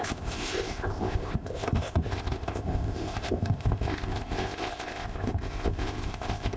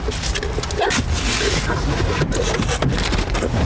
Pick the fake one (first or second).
first